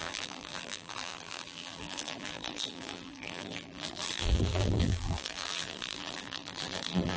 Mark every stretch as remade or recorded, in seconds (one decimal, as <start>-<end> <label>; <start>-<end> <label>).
0.0-7.2 remade